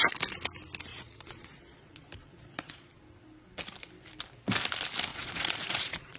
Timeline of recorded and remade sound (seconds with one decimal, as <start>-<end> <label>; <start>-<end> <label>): 0.0-0.9 recorded; 0.9-3.0 remade; 3.0-5.1 recorded; 5.1-6.2 remade